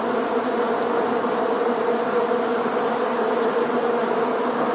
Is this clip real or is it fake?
real